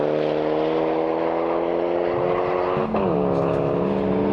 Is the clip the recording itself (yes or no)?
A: yes